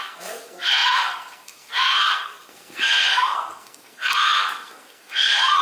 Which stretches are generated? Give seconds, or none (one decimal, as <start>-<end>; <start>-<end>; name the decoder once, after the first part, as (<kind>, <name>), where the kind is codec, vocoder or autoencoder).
0.0-5.6 (codec, SNAC)